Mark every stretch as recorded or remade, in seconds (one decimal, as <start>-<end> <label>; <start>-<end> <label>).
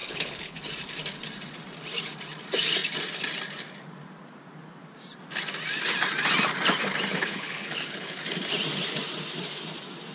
0.0-0.6 remade; 0.6-7.1 recorded; 7.1-8.2 remade; 8.2-10.1 recorded